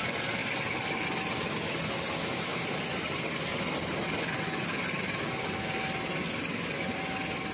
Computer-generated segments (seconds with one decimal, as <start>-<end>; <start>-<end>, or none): none